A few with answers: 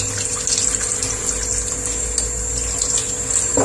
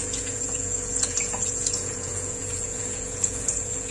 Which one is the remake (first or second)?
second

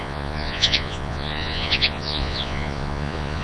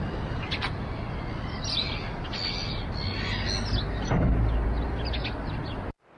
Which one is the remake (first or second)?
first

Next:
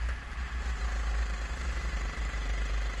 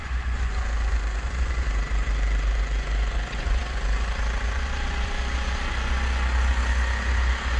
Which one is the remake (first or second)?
second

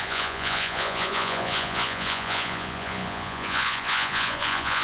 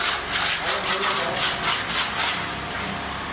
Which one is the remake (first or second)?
first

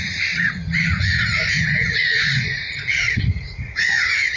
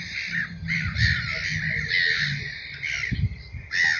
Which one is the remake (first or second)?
first